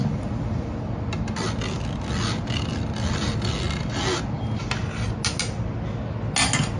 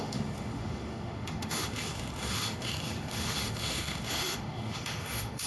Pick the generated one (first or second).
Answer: second